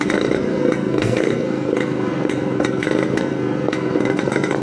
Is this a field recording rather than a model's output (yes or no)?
no